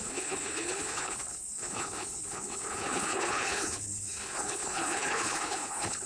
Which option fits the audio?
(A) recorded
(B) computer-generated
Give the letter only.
B